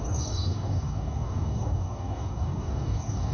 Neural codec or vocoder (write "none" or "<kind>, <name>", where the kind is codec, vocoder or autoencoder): codec, DAC